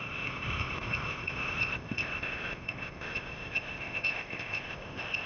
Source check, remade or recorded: remade